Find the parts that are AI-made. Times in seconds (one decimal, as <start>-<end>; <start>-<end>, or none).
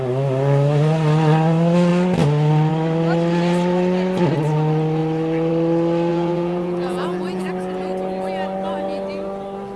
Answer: 6.1-7.5